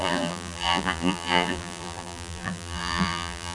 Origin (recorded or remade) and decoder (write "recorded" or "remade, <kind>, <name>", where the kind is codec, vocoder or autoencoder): remade, vocoder, BigVGAN v2